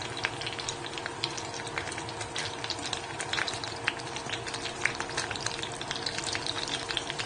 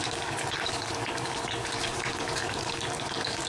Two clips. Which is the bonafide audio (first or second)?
first